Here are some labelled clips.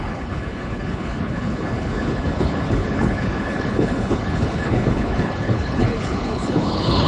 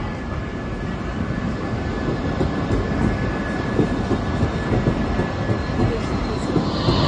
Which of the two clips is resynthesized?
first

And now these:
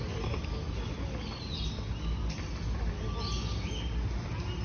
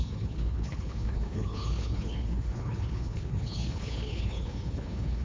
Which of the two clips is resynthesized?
second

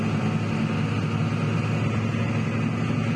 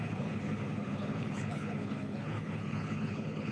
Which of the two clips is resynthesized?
second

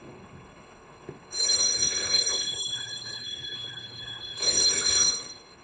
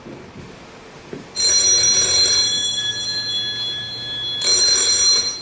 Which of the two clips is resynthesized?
first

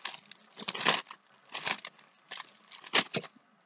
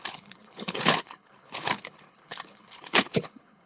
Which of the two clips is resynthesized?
second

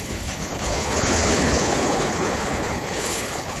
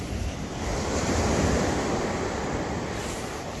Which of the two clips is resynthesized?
first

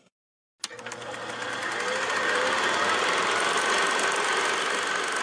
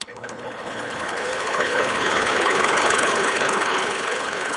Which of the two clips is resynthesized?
second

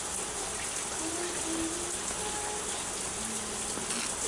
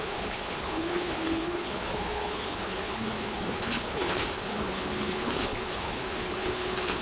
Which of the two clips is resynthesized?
second